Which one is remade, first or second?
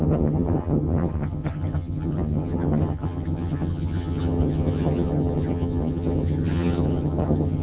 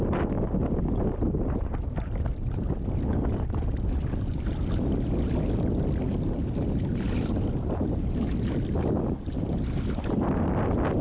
first